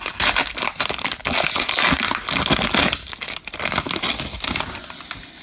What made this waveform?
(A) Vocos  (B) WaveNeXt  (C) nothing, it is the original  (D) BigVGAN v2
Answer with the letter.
C